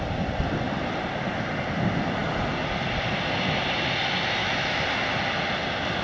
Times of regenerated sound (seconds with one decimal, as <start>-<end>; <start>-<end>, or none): 4.4-4.9